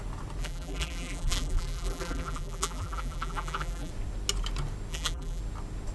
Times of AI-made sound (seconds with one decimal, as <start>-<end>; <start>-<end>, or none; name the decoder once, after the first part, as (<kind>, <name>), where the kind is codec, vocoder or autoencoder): 0.4-3.9 (vocoder, BigVGAN v2); 4.9-5.4